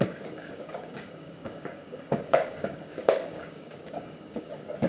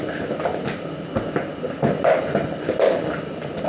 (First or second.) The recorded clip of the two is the second